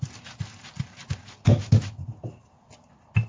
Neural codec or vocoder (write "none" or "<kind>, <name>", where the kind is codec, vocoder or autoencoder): none